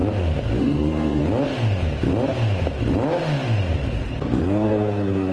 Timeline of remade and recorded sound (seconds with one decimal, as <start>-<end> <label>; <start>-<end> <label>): 0.0-0.6 recorded; 0.6-1.2 remade; 1.2-4.4 recorded; 4.4-5.3 remade